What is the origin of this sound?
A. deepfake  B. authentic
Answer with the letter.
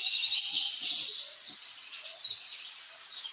A